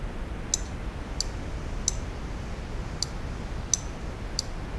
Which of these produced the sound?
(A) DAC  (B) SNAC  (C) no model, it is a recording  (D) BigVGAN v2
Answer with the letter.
C